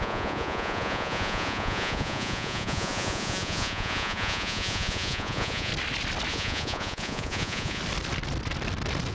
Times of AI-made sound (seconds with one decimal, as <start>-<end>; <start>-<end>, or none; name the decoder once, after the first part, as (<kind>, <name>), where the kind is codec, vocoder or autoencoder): 0.0-5.7 (vocoder, Vocos); 6.3-7.8